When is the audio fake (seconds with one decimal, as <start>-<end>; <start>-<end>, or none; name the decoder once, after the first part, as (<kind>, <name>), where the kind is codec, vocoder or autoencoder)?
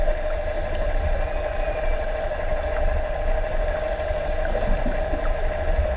none